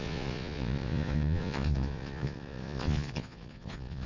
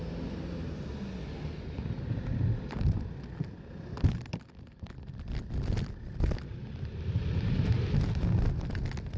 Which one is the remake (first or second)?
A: first